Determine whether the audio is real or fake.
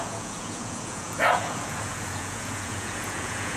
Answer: fake